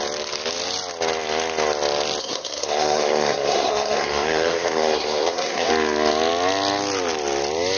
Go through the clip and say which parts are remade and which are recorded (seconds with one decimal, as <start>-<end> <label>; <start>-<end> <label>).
0.0-2.2 recorded; 2.2-5.7 remade; 5.7-7.8 recorded